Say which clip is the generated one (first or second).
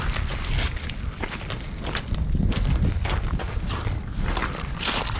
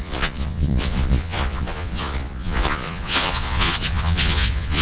second